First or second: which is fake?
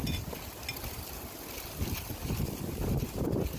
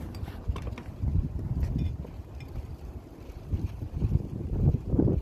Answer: second